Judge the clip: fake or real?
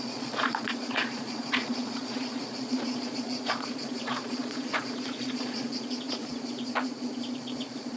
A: fake